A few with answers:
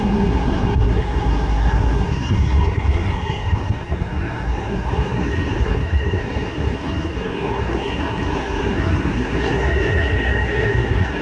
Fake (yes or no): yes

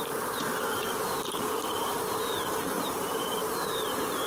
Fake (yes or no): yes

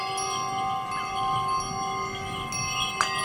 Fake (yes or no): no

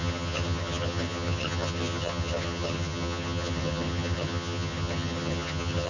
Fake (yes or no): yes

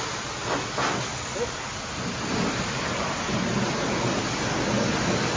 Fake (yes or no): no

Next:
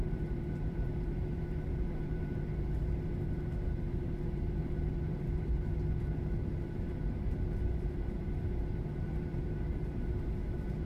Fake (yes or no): yes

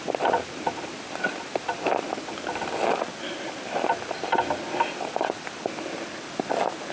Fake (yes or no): no